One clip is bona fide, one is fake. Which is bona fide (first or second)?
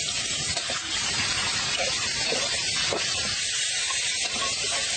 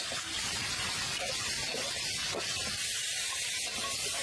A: second